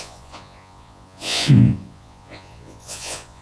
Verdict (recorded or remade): remade